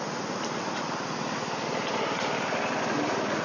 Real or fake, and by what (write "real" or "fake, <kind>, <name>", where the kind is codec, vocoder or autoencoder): real